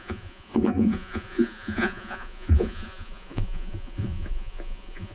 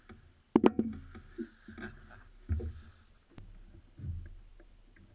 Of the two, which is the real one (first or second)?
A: second